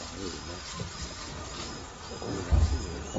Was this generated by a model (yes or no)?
no